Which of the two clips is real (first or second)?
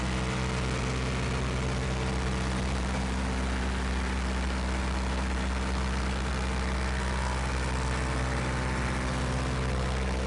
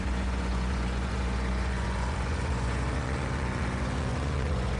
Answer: first